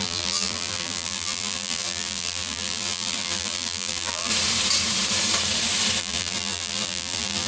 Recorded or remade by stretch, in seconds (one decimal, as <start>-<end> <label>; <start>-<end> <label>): 0.0-4.3 remade; 4.3-6.0 recorded; 6.0-7.5 remade